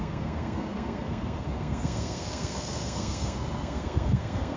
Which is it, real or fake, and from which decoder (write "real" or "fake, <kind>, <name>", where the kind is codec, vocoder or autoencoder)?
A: fake, codec, SNAC